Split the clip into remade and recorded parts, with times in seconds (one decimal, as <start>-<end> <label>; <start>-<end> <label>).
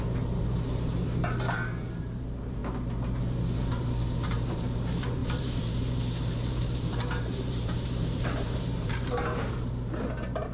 0.0-2.6 remade; 2.6-3.2 recorded; 3.2-10.5 remade